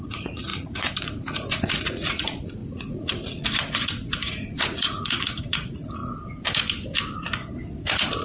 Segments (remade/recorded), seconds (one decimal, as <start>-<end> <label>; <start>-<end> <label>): 0.0-6.0 remade; 6.0-8.2 recorded

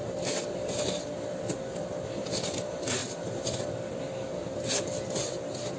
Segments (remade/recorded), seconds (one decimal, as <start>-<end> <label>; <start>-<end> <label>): 0.0-5.8 recorded

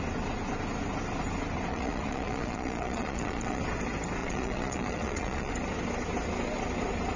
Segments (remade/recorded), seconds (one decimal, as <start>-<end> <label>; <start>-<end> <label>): 0.0-1.7 recorded; 1.7-3.6 remade; 3.6-4.2 recorded; 4.2-5.5 remade; 5.5-7.2 recorded